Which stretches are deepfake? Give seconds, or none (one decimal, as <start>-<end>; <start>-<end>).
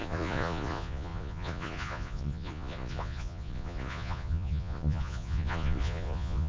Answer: 0.0-6.5